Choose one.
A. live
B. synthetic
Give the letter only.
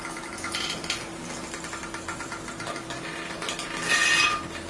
A